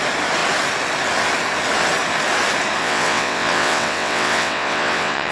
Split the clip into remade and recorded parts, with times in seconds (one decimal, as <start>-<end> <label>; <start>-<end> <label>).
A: 0.0-2.8 recorded; 2.8-5.3 remade